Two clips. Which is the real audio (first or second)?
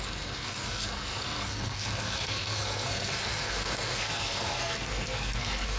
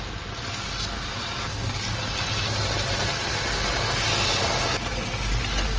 second